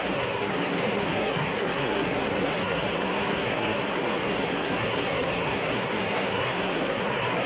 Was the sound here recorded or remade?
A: remade